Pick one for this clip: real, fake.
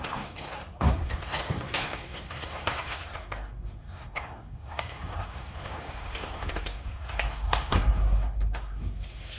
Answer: fake